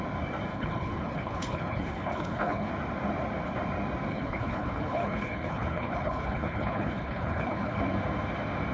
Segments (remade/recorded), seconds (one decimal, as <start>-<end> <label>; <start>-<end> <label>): 0.0-0.5 recorded; 0.5-2.7 remade; 2.7-4.1 recorded; 4.1-7.8 remade; 7.8-8.7 recorded